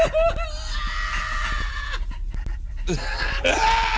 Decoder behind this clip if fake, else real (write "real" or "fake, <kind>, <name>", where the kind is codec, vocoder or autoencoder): real